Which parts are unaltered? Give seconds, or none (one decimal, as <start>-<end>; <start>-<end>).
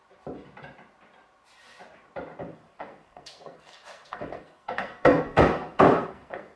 0.0-2.5